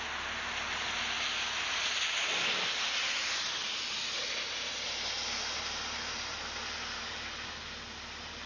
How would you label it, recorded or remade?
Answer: recorded